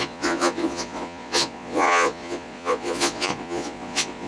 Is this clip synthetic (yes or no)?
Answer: yes